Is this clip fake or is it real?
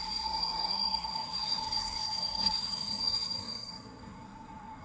fake